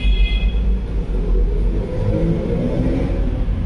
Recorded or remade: recorded